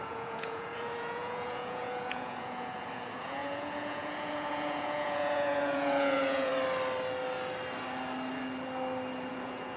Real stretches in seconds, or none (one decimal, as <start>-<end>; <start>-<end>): 6.5-9.3